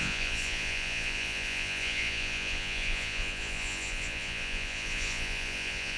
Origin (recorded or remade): remade